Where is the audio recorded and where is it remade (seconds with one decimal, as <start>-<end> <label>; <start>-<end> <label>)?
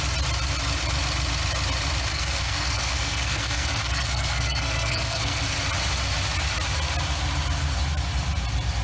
0.0-2.1 recorded; 2.1-5.4 remade; 5.4-8.8 recorded